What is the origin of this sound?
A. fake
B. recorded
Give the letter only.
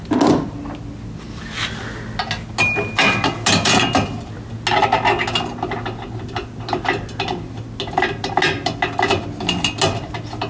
B